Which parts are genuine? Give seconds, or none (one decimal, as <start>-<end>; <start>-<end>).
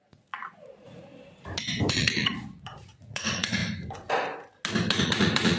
1.1-1.9; 3.6-5.0